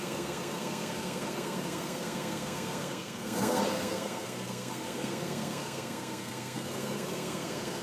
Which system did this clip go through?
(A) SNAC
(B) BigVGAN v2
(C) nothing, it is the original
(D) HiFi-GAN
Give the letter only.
A